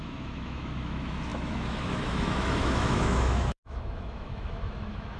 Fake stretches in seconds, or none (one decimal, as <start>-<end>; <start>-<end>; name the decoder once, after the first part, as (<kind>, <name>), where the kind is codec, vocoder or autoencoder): 0.0-5.2 (autoencoder, DAC-VAE)